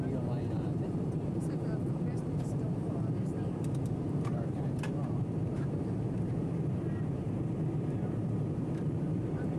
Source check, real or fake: fake